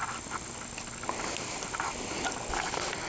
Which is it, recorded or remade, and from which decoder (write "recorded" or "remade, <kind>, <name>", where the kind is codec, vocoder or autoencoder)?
recorded